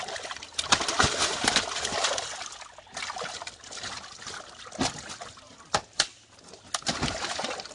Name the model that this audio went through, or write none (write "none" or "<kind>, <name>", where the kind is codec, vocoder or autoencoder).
none